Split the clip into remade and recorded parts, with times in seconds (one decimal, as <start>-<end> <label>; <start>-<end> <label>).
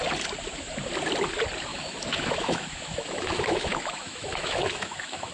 0.0-1.7 recorded; 1.7-5.3 remade